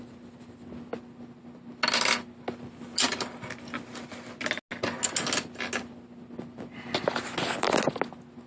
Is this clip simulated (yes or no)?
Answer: no